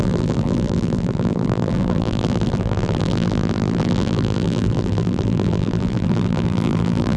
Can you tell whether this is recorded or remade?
remade